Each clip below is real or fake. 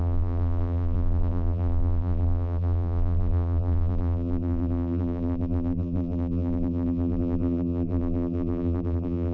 fake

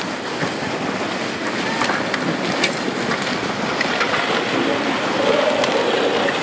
real